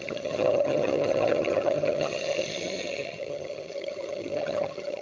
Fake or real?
fake